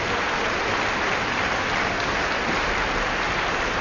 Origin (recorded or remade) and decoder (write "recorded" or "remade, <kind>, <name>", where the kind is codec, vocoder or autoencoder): recorded